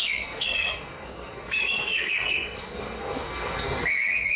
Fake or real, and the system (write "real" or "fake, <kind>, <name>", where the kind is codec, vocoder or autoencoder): fake, codec, SNAC